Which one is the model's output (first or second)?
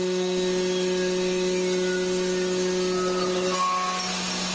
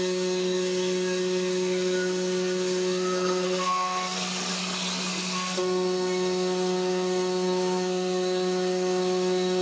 second